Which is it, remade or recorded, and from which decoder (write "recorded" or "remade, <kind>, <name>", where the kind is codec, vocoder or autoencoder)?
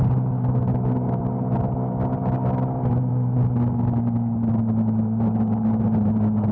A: recorded